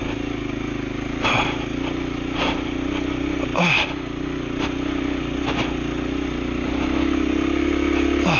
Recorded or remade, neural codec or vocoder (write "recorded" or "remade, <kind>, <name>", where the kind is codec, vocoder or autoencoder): recorded